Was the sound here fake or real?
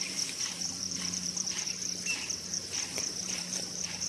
fake